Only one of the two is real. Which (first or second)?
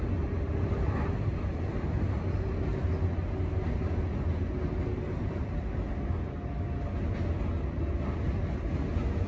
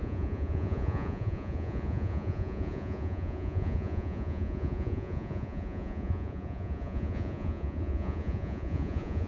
first